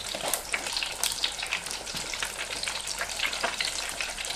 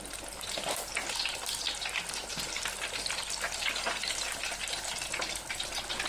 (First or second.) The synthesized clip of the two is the first